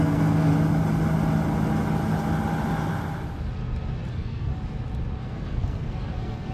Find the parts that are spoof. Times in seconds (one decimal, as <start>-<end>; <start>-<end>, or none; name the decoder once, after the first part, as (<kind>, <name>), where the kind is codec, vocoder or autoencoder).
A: 0.0-0.5 (codec, SNAC); 4.1-4.5; 5.2-6.5